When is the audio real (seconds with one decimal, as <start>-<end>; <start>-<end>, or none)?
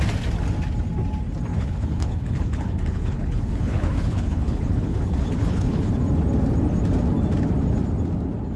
0.0-1.5; 5.9-8.6